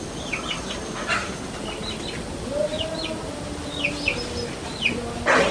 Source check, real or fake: real